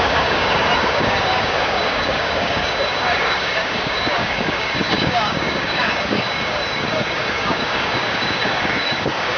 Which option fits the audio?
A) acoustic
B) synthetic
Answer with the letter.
B